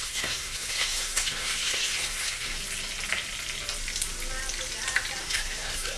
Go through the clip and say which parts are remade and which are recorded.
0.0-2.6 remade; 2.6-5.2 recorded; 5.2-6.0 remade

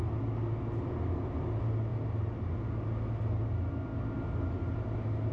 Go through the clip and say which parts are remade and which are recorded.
0.0-5.3 recorded